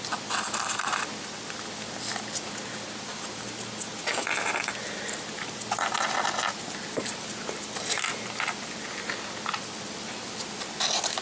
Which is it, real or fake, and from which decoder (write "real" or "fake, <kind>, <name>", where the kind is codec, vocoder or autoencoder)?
real